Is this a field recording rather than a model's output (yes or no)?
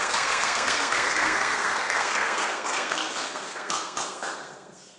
no